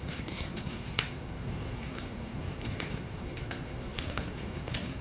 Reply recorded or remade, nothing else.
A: remade